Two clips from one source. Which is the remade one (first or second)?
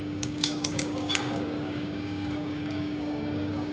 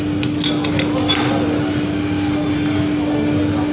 first